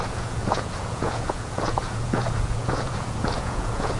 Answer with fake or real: fake